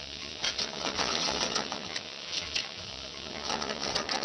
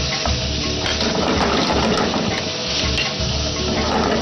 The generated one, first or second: first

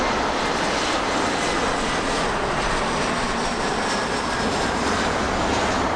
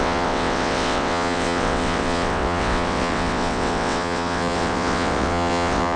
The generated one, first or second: second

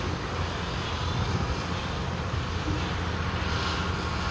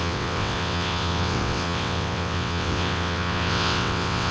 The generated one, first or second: second